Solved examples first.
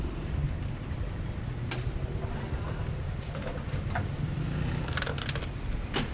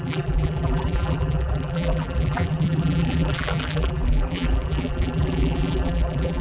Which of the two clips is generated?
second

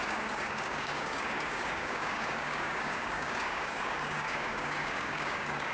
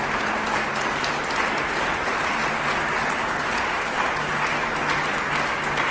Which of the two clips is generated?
first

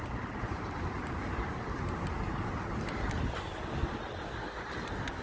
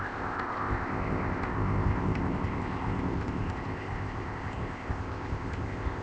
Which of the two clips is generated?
second